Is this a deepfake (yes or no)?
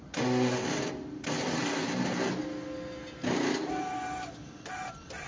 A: no